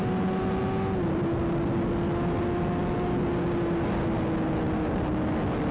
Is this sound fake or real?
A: real